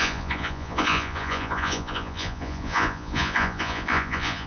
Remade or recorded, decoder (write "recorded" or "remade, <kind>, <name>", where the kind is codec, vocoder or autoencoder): remade, vocoder, Vocos